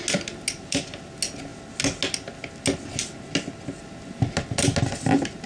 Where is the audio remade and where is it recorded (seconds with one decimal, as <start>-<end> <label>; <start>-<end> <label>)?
0.0-5.5 recorded